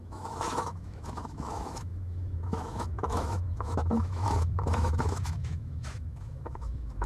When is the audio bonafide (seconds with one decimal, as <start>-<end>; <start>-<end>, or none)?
none